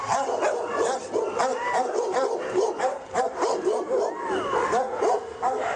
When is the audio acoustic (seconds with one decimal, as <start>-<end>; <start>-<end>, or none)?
0.0-1.5; 4.1-5.8